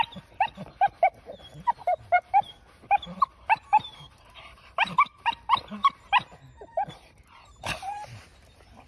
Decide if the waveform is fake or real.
real